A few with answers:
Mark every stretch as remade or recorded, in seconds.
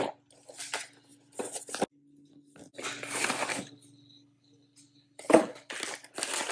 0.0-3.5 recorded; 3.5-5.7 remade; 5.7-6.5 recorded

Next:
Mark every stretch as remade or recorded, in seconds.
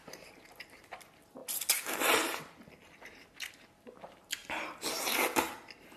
0.0-6.0 recorded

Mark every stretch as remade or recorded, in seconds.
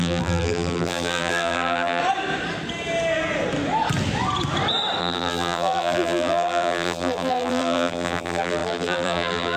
0.0-2.0 remade; 2.0-5.0 recorded; 5.0-9.6 remade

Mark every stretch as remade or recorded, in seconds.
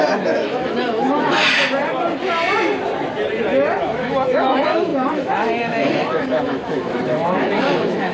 0.0-1.4 remade; 1.4-3.7 recorded; 3.7-8.1 remade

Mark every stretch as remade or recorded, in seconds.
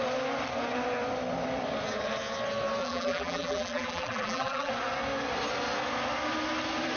0.0-2.8 recorded; 2.8-4.7 remade; 4.7-7.0 recorded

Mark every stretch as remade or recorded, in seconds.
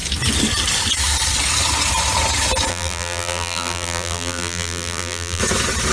0.0-2.7 recorded; 2.7-5.4 remade; 5.4-5.9 recorded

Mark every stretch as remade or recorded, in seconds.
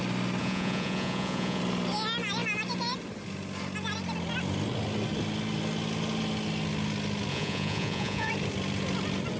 0.0-0.4 recorded; 0.4-1.6 remade; 1.6-7.3 recorded; 7.3-8.3 remade; 8.3-9.4 recorded